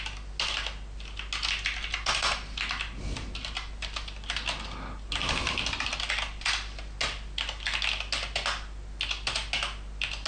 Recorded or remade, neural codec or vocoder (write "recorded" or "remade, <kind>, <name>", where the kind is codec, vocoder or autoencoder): recorded